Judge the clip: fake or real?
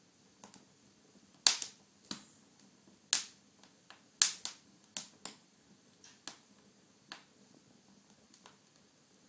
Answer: real